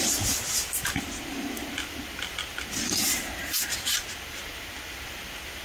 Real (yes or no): yes